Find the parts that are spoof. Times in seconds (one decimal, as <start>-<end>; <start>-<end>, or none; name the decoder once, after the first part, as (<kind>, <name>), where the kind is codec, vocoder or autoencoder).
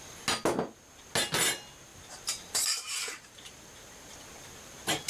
1.9-5.1 (vocoder, BigVGAN v2)